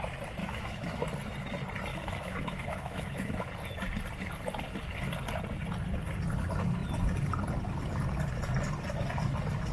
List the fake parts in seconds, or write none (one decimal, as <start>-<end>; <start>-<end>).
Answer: 0.4-1.0; 1.9-3.5